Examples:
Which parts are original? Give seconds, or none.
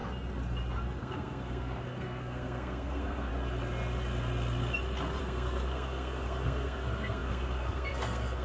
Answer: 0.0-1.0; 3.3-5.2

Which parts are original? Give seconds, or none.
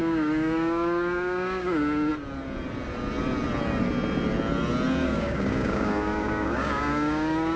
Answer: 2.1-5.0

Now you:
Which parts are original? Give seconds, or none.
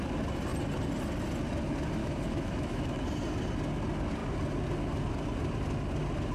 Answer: 0.0-2.0; 3.0-6.3